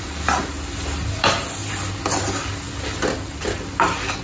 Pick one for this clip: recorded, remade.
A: recorded